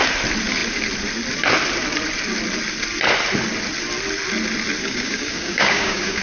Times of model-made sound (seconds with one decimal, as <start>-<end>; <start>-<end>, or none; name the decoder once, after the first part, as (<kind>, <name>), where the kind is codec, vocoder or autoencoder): 4.8-6.2 (codec, DAC)